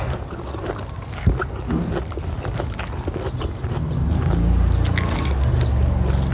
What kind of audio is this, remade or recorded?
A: recorded